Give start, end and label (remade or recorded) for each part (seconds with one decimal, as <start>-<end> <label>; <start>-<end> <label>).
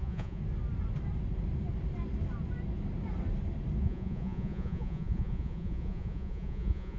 0.0-0.4 remade; 0.4-3.8 recorded; 3.8-7.0 remade